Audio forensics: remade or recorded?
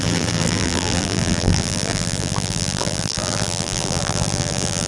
remade